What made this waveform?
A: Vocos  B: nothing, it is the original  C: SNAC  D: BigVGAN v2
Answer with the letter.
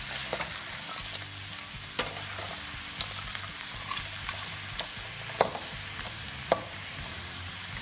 B